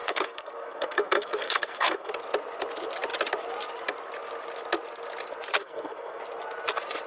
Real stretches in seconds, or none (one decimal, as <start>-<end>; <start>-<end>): 2.1-5.6; 6.2-7.1